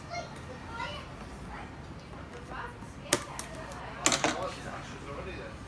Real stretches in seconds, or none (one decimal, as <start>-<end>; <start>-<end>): 0.0-5.7